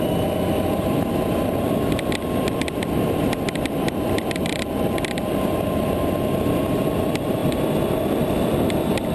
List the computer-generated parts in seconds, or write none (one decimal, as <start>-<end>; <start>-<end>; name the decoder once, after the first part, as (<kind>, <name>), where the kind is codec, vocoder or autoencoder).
0.0-7.4 (vocoder, BigVGAN v2); 8.2-9.1